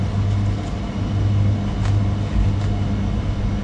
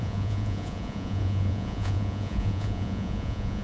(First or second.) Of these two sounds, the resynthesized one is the second